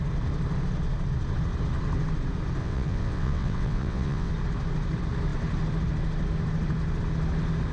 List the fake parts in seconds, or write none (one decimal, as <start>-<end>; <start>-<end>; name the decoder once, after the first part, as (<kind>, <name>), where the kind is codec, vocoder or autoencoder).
2.6-4.3 (vocoder, WaveNeXt)